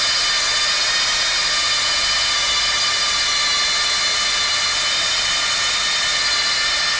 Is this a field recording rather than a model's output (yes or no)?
yes